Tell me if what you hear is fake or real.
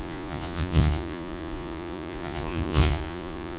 fake